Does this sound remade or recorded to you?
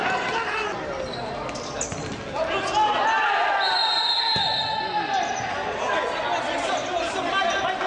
recorded